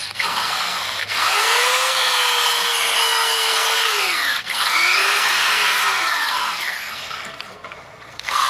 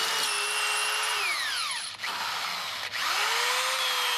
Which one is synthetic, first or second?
first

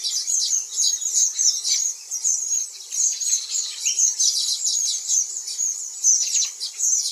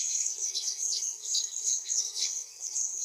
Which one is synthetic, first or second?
second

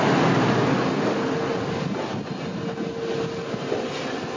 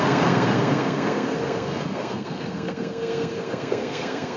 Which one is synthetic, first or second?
second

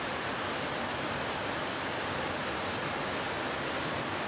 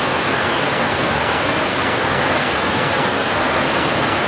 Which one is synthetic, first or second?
second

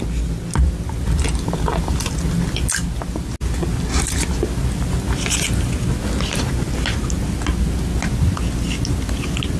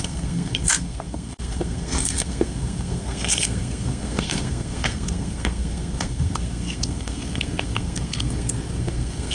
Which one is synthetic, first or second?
second